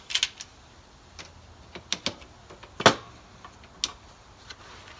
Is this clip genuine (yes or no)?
yes